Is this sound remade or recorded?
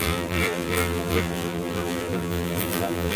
remade